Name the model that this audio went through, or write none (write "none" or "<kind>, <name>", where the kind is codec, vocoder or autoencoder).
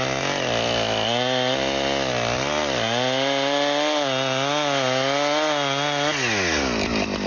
none